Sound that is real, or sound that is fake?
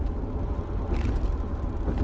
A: real